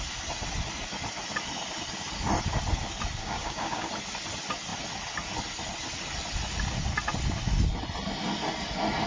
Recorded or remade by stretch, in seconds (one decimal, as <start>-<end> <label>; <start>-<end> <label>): 0.0-3.2 recorded; 3.2-3.9 remade; 3.9-9.1 recorded